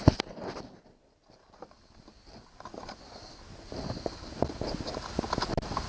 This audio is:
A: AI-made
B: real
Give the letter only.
B